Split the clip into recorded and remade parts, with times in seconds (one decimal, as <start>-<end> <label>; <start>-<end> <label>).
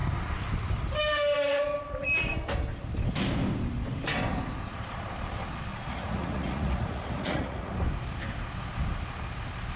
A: 0.0-5.7 recorded; 5.7-7.7 remade; 7.7-9.8 recorded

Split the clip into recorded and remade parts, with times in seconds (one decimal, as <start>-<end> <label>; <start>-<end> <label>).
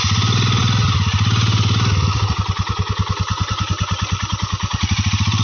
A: 0.0-5.4 recorded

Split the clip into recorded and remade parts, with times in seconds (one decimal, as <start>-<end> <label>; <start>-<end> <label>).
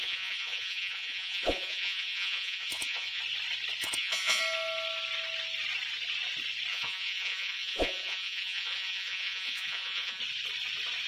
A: 0.0-3.2 remade; 3.2-3.8 recorded; 3.8-4.4 remade; 4.4-6.7 recorded; 6.7-10.2 remade; 10.2-11.1 recorded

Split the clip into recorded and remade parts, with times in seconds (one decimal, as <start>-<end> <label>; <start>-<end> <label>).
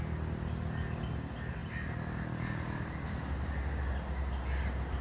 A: 0.0-5.0 recorded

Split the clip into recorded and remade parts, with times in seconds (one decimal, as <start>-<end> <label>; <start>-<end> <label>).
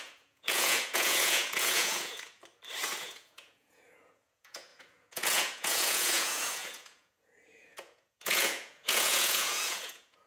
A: 0.0-2.4 remade; 2.4-3.0 recorded; 3.0-10.3 remade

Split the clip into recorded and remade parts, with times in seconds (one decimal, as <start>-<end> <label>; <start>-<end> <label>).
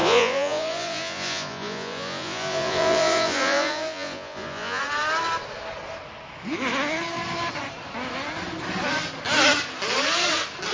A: 0.0-4.8 remade; 4.8-10.7 recorded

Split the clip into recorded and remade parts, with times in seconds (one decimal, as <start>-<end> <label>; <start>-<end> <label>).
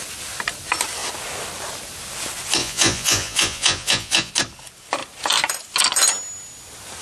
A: 0.0-2.6 recorded; 2.6-4.3 remade; 4.3-7.0 recorded